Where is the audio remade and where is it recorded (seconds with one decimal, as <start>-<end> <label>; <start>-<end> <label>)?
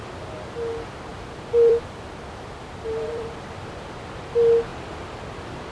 0.0-1.1 recorded; 1.1-3.8 remade; 3.8-4.7 recorded; 4.7-5.7 remade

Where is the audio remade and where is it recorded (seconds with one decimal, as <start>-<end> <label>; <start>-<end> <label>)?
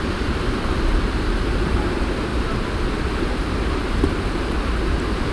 0.0-2.3 remade; 2.3-3.4 recorded; 3.4-5.3 remade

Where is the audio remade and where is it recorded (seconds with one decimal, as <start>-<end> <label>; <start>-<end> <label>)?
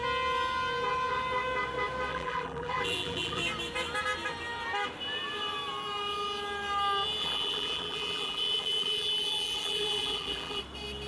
0.0-2.1 recorded; 2.1-3.4 remade; 3.4-7.2 recorded; 7.2-10.6 remade; 10.6-11.1 recorded